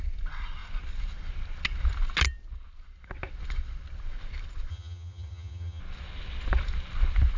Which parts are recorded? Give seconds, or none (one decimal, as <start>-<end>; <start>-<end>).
0.0-4.7; 5.8-7.4